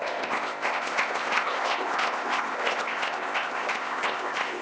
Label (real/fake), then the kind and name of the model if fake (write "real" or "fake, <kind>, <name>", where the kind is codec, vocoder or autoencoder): fake, codec, ZipCodec